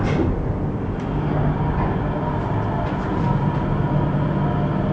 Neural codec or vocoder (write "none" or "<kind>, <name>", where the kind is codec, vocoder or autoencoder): none